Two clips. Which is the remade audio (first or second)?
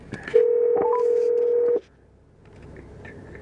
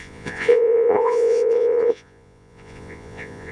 second